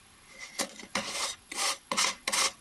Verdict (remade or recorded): remade